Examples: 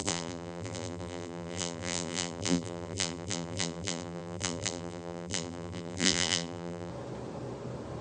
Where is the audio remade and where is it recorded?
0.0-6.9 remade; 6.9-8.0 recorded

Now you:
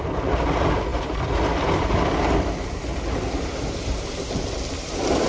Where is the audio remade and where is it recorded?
0.0-5.3 recorded